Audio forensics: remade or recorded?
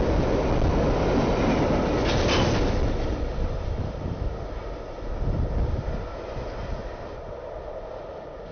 recorded